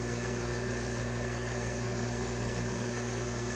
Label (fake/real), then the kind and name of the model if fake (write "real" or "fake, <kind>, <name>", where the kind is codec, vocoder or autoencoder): fake, codec, SNAC